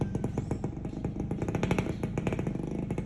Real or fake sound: real